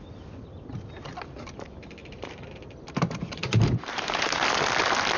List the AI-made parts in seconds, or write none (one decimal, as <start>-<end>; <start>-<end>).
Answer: 2.0-4.5